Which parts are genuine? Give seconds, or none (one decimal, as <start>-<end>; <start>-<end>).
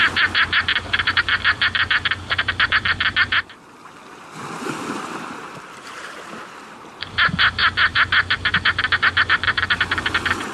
1.8-5.0; 7.6-9.7